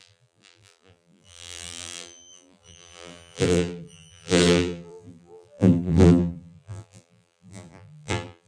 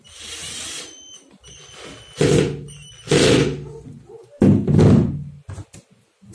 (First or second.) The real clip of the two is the second